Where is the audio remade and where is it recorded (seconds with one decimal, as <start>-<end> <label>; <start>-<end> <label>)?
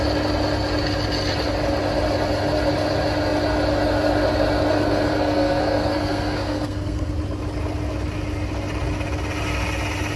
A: 0.0-4.7 recorded; 4.7-7.1 remade; 7.1-10.2 recorded